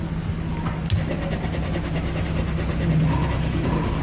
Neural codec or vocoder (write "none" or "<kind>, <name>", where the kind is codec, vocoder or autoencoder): none